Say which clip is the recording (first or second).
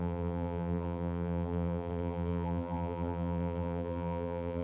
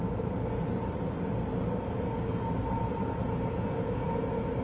second